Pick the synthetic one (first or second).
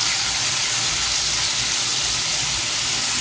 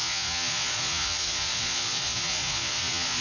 second